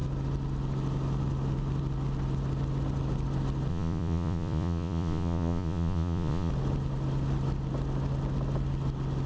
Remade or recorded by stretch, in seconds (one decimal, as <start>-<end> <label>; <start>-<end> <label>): 0.0-3.7 recorded; 3.7-6.5 remade; 6.5-9.3 recorded